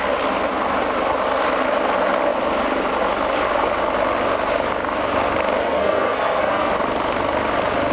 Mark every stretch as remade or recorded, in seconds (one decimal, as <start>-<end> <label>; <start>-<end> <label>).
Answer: 0.0-5.6 recorded; 5.6-6.7 remade; 6.7-7.9 recorded

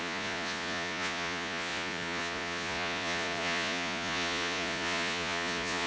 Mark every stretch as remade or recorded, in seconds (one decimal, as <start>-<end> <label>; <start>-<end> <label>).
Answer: 0.0-5.9 remade

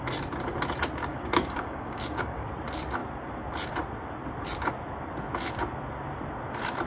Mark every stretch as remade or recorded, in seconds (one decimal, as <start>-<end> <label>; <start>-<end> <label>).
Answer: 0.0-1.1 recorded; 1.1-2.5 remade; 2.5-6.9 recorded

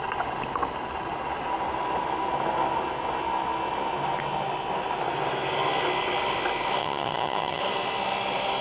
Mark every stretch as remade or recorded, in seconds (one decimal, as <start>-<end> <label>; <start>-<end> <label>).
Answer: 0.0-6.8 recorded; 6.8-7.6 remade; 7.6-8.6 recorded

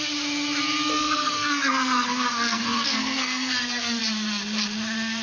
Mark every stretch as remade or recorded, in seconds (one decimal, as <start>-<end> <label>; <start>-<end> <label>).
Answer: 0.0-0.9 recorded; 0.9-4.0 remade; 4.0-5.2 recorded

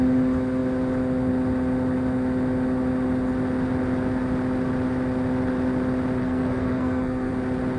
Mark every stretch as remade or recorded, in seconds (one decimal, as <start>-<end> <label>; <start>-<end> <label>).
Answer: 0.0-6.2 recorded; 6.2-7.3 remade; 7.3-7.8 recorded